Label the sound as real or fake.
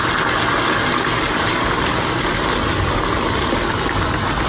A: fake